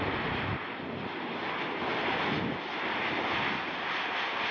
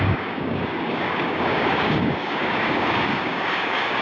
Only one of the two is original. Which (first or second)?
first